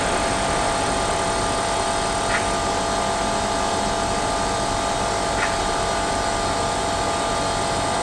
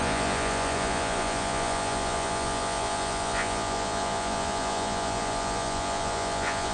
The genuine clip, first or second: first